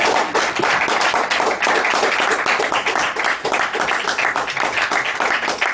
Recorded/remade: recorded